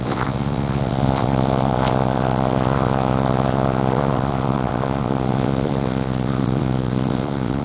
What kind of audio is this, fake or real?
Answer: fake